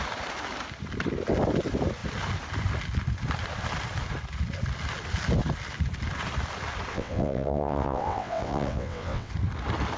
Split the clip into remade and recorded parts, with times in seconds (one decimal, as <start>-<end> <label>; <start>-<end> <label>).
0.0-6.9 recorded; 6.9-9.3 remade; 9.3-10.0 recorded